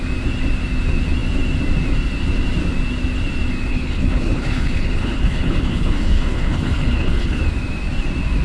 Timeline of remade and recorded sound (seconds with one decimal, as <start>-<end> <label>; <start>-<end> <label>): 0.0-3.7 recorded; 3.7-7.4 remade; 7.4-8.4 recorded

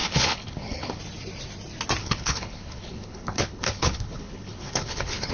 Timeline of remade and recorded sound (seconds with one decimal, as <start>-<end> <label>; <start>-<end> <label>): 0.0-1.0 remade; 1.0-2.0 recorded; 2.0-5.3 remade

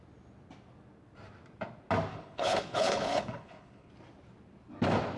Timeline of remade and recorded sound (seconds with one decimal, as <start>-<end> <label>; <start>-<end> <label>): 0.0-2.1 recorded; 2.1-3.9 remade; 3.9-5.2 recorded

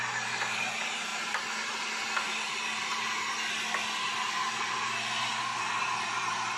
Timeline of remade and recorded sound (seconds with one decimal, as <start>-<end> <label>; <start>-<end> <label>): 0.0-6.6 recorded

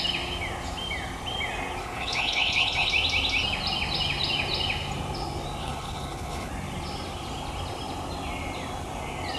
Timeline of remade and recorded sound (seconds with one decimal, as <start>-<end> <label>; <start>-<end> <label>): 0.0-1.8 recorded; 1.8-2.9 remade; 2.9-5.6 recorded; 5.6-6.5 remade; 6.5-9.4 recorded

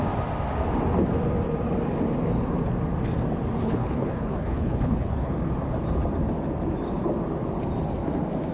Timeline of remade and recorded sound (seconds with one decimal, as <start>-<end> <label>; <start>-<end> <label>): 0.0-3.6 recorded; 3.6-5.3 remade; 5.3-8.5 recorded

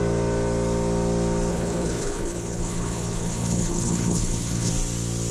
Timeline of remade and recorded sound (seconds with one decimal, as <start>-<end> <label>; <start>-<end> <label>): 0.0-1.5 recorded; 1.5-4.7 remade; 4.7-5.3 recorded